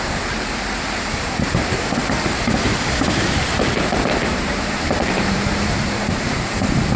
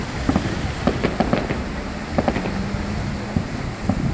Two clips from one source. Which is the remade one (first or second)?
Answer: first